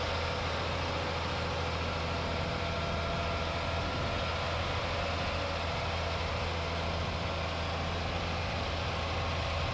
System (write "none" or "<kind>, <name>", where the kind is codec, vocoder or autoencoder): none